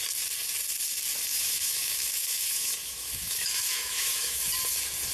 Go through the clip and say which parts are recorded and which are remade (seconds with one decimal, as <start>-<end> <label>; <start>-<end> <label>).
0.0-1.3 recorded; 1.3-4.4 remade; 4.4-5.1 recorded

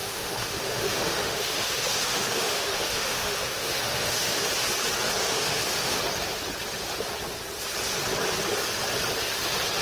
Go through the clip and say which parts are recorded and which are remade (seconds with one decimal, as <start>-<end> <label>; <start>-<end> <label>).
0.0-4.5 remade; 4.5-5.2 recorded; 5.2-6.0 remade; 6.0-9.8 recorded

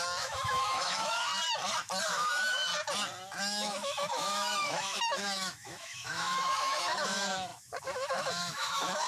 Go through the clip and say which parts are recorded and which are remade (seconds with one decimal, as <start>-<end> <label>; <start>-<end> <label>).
0.0-1.3 remade; 1.3-2.1 recorded; 2.1-2.7 remade; 2.7-3.4 recorded; 3.4-9.1 remade